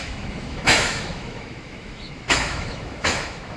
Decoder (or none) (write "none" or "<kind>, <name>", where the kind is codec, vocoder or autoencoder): autoencoder, DAC-VAE